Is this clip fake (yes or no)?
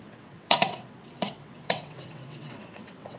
yes